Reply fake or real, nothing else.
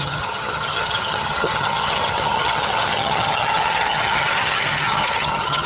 fake